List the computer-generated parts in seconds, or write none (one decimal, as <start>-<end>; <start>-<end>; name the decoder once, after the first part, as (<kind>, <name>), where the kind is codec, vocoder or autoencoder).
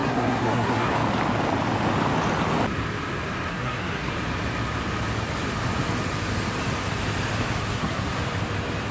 0.0-0.9 (codec, SNAC); 3.5-4.1; 7.6-8.2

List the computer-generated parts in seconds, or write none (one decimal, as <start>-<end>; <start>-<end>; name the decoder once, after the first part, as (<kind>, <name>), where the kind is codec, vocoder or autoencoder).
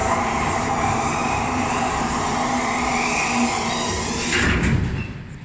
0.0-0.7 (vocoder, BigVGAN v2); 1.2-2.0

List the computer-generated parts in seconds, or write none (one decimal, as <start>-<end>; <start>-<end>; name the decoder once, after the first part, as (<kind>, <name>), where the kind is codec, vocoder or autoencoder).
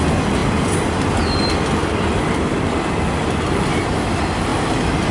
1.8-3.7 (vocoder, BigVGAN v2); 4.5-5.1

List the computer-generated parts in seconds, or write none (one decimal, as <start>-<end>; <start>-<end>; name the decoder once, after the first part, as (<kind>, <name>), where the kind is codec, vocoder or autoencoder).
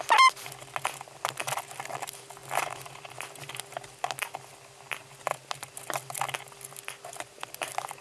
none